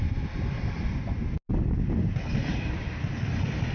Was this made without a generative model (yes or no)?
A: yes